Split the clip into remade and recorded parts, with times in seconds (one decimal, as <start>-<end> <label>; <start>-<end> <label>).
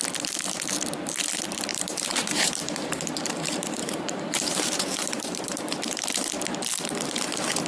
0.0-1.7 recorded; 1.7-6.3 remade; 6.3-7.7 recorded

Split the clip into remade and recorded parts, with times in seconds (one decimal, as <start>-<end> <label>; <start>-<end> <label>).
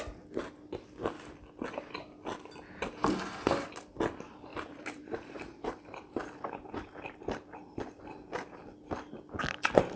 0.0-4.5 recorded; 4.5-8.0 remade; 8.0-10.0 recorded